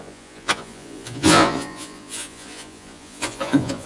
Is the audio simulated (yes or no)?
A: yes